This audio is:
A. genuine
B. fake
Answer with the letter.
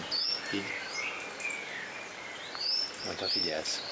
A